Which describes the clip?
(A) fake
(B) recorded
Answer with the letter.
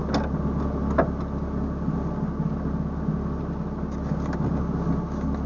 B